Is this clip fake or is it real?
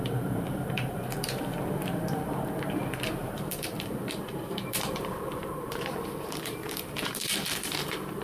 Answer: fake